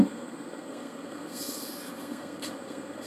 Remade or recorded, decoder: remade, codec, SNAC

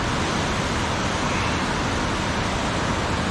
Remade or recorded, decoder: recorded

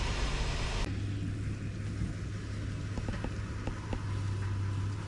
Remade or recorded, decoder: recorded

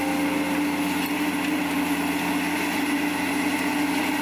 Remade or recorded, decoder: recorded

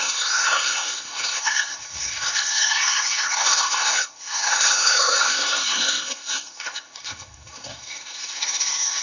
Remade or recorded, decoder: remade, codec, SNAC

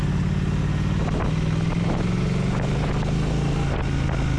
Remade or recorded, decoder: recorded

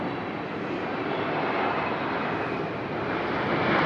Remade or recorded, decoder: recorded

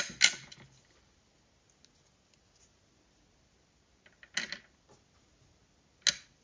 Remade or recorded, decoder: recorded